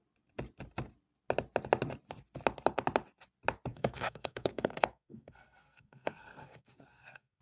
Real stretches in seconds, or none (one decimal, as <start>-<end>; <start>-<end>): 0.0-3.7